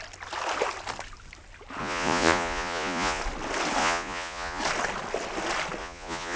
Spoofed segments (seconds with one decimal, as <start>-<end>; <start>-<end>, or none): 1.8-3.2; 3.8-4.6; 5.8-6.4